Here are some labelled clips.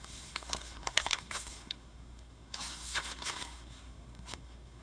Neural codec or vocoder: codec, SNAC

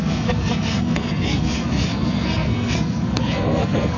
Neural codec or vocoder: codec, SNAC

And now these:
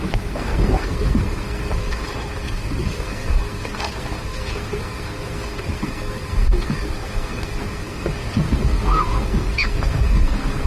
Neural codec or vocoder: codec, SNAC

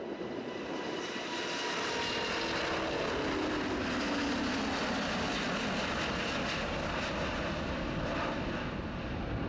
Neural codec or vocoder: none